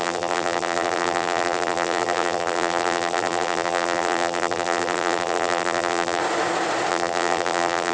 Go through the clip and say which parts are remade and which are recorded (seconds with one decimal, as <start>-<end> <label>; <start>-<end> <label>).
0.0-6.2 remade; 6.2-6.9 recorded; 6.9-7.9 remade

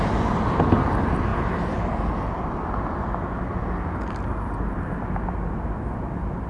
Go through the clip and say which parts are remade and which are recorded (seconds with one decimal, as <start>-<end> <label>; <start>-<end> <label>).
0.0-6.5 recorded

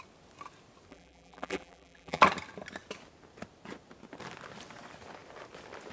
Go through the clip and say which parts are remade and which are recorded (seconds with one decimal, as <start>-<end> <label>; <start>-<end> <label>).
0.0-0.9 recorded; 0.9-2.2 remade; 2.2-5.9 recorded

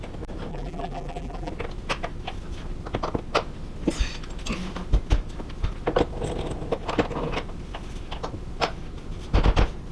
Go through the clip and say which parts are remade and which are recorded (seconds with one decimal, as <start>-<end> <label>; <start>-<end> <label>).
0.0-0.5 recorded; 0.5-1.5 remade; 1.5-9.9 recorded

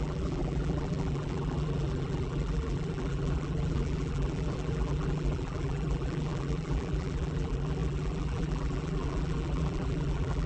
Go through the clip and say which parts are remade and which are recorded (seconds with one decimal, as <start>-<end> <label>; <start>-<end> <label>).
0.0-10.5 remade